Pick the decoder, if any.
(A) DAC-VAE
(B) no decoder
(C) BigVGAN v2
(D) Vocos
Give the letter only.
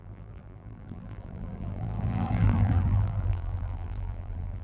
C